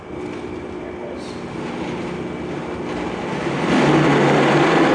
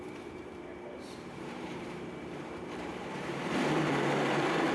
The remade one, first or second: second